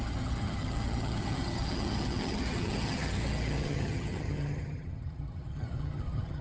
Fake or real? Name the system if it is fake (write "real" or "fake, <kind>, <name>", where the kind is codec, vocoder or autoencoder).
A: fake, vocoder, HiFi-GAN